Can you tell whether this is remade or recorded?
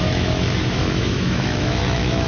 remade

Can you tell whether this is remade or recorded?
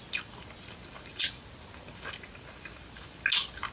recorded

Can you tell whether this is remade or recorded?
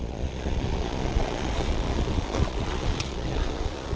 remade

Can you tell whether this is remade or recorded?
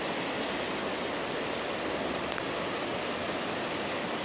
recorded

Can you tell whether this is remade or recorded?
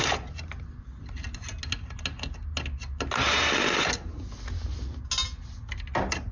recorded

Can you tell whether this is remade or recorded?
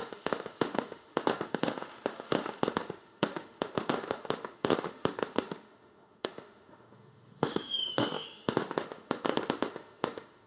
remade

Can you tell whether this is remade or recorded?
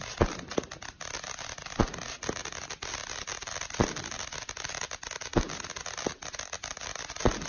recorded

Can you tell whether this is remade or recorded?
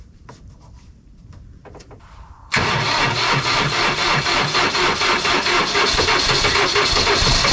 remade